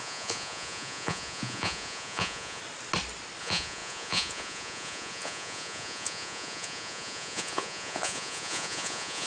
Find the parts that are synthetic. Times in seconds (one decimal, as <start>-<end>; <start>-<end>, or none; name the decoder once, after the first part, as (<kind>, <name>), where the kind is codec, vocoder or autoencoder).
0.0-2.6 (vocoder, Vocos); 3.4-9.3